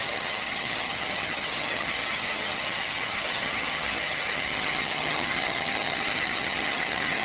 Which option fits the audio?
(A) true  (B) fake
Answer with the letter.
B